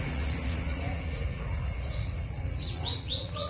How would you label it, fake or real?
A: fake